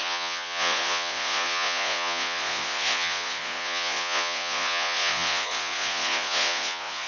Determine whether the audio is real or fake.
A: fake